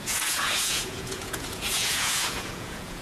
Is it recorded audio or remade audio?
remade